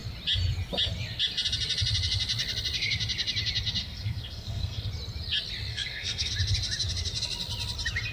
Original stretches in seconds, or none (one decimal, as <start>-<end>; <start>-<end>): 0.0-3.8; 4.9-5.7; 6.3-8.1